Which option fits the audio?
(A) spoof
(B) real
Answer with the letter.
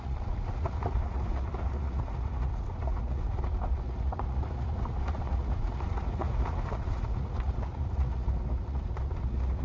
A